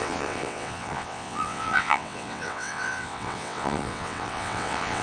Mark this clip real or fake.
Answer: fake